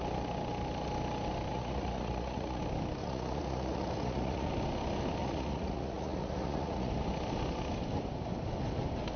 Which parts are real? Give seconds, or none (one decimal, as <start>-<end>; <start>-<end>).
0.0-1.5; 2.6-3.0; 4.5-5.2; 6.9-9.2